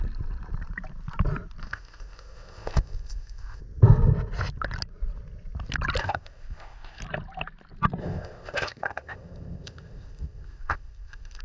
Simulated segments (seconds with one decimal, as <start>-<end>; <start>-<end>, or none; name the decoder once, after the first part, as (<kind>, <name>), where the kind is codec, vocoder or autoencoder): 1.6-3.6 (codec, ZipCodec); 6.0-7.0; 8.0-11.4